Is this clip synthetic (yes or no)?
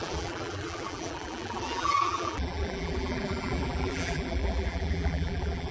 yes